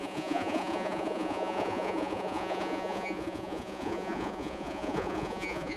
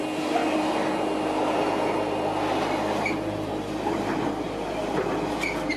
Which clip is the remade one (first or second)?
first